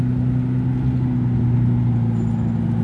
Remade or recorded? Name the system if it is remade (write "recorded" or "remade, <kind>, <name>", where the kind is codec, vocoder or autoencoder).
recorded